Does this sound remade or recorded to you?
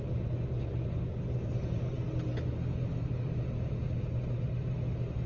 recorded